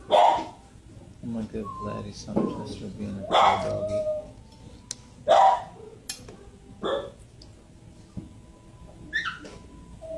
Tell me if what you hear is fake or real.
real